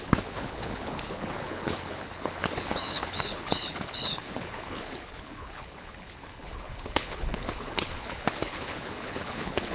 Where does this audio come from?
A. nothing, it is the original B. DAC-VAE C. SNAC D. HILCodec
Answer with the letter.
D